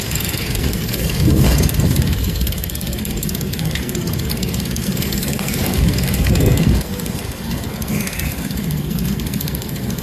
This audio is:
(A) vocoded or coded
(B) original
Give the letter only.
A